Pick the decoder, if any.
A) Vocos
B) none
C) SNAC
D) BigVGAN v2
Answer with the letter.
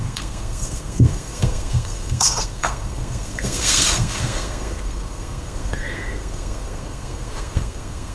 C